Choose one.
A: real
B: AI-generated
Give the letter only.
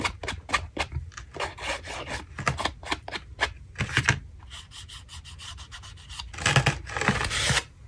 A